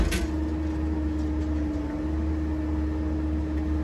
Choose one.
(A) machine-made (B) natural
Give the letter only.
B